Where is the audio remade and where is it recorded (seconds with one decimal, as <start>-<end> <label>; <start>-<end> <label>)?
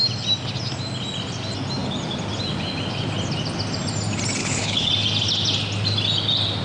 0.0-4.4 recorded; 4.4-4.9 remade; 4.9-6.6 recorded